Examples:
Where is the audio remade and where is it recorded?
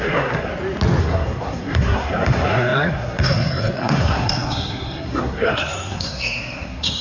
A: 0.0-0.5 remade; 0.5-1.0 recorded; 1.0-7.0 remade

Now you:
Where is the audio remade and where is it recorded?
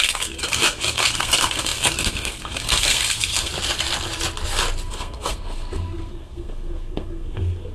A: 0.0-3.5 remade; 3.5-4.9 recorded; 4.9-7.7 remade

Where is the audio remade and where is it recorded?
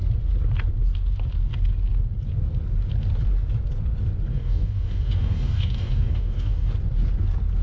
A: 0.0-4.3 recorded; 4.3-6.7 remade; 6.7-7.6 recorded